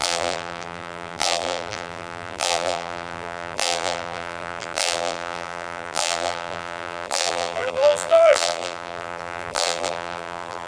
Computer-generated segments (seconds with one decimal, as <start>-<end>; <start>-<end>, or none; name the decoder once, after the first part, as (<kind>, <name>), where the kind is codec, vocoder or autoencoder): 0.0-10.7 (vocoder, BigVGAN v2)